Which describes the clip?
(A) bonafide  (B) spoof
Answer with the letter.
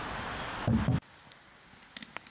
A